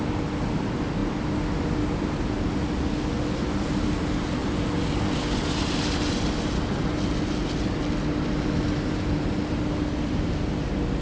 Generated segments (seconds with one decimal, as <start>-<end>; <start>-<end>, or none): none